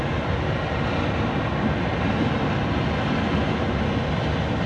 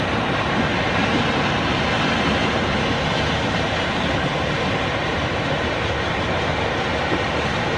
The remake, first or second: second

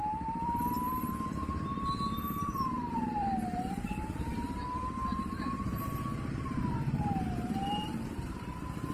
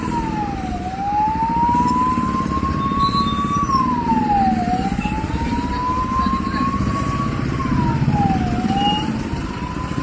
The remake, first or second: first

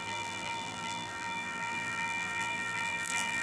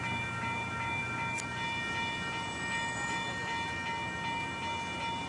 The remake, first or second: first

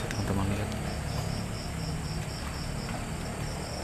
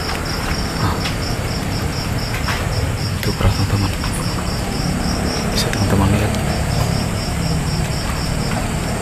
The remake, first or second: second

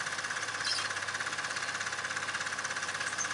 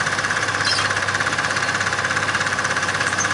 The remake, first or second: second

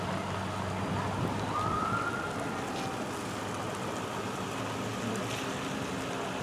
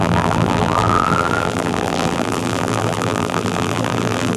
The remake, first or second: second